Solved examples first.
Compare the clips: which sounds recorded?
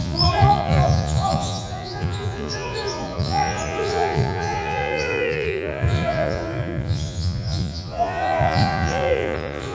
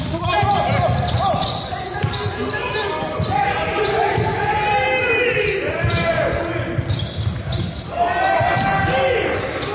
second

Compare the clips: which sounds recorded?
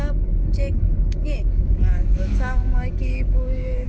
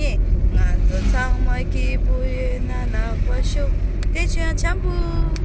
second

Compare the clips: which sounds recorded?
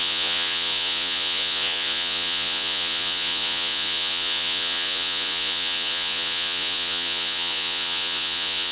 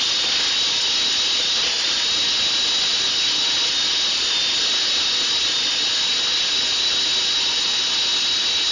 second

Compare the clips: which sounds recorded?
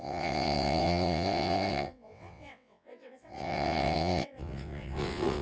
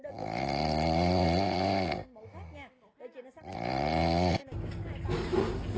second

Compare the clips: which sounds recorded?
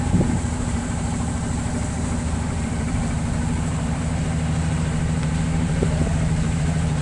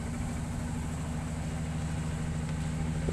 second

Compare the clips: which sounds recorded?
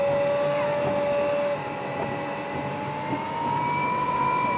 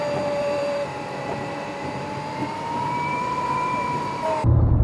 first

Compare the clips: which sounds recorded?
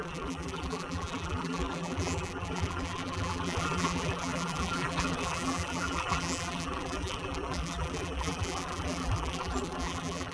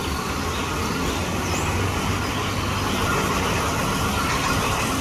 second